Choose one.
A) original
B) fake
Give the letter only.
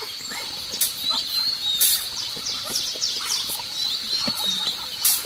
B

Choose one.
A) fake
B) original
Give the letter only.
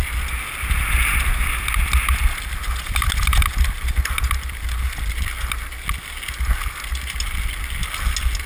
B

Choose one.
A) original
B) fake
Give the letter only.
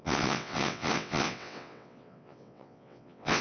B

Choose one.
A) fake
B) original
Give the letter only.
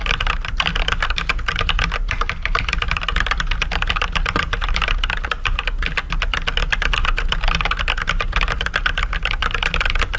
B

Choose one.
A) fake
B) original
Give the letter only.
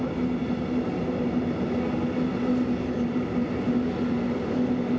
B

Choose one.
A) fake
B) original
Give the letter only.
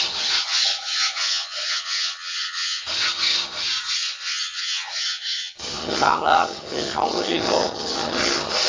A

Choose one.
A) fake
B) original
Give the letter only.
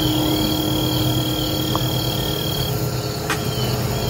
B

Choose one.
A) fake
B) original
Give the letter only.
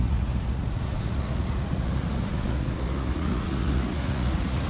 A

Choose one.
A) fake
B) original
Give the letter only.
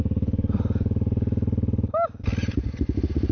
B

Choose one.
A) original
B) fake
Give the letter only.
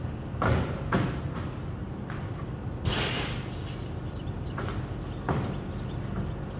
A